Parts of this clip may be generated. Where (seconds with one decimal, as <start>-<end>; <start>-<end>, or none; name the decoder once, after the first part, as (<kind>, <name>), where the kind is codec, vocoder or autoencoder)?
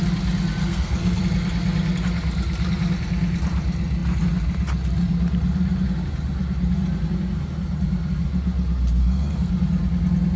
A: 0.6-1.2 (codec, SNAC); 9.0-9.5